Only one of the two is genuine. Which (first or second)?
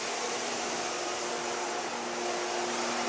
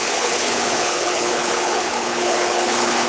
first